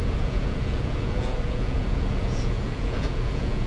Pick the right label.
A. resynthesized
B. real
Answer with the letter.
A